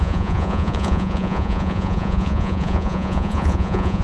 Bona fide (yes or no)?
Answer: no